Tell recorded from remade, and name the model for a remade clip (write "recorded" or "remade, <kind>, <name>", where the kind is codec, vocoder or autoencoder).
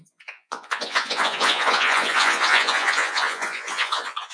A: remade, vocoder, Vocos